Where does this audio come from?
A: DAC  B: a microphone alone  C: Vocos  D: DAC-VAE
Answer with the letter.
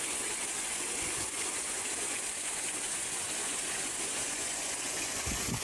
C